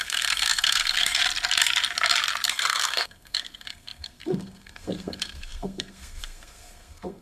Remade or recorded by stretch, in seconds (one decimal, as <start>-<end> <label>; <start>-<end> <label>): 0.0-1.2 remade; 1.2-2.5 recorded; 2.5-7.2 remade